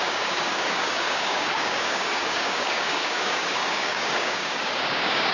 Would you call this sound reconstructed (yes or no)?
yes